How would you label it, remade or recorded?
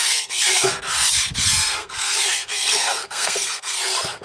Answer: remade